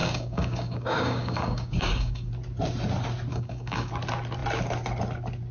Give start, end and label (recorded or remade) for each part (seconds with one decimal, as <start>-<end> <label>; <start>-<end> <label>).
0.0-2.3 remade; 2.3-3.3 recorded; 3.3-3.9 remade; 3.9-5.5 recorded